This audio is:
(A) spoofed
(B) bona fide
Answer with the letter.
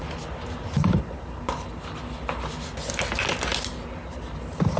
B